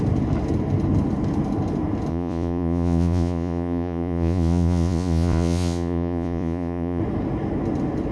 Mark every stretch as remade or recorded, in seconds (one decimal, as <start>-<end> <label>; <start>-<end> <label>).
0.0-2.1 recorded; 2.1-7.0 remade; 7.0-8.1 recorded